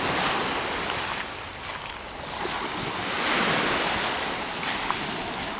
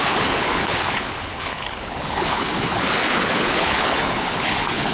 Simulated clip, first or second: second